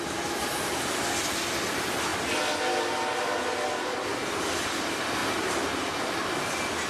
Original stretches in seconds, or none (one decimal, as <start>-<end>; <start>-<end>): 0.0-6.9